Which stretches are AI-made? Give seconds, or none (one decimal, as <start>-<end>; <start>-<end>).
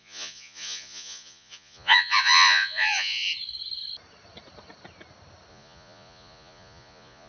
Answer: 0.0-3.3; 5.5-7.3